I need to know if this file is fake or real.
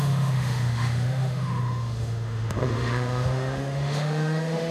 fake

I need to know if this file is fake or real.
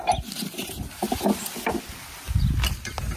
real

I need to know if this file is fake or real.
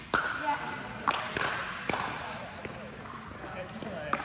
real